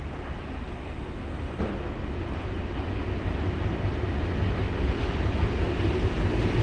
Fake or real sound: real